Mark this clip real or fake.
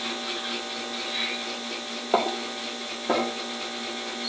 real